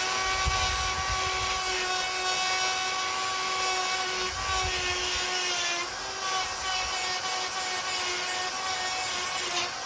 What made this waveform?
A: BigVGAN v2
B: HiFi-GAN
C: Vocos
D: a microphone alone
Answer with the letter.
D